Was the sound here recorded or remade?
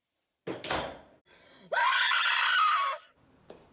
recorded